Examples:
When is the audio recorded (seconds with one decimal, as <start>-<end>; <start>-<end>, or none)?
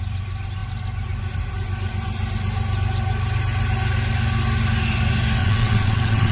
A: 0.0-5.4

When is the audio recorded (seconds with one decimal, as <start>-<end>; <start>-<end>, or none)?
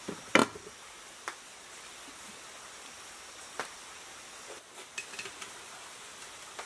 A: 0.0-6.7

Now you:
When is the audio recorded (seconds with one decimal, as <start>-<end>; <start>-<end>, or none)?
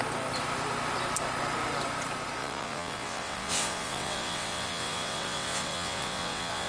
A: 0.0-2.4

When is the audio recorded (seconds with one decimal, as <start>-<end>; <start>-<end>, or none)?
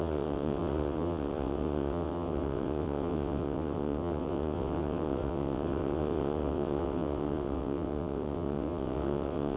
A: none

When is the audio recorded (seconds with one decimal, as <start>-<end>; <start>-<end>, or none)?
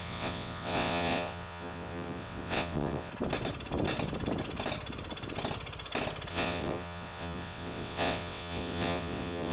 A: 3.1-6.3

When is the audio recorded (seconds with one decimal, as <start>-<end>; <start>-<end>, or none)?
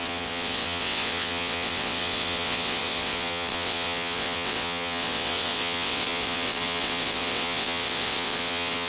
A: none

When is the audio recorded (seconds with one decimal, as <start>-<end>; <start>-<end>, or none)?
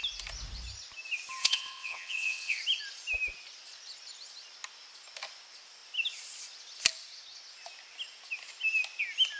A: 0.0-1.4; 2.6-9.4